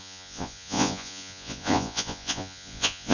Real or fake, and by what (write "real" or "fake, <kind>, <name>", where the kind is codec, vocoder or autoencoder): fake, vocoder, Vocos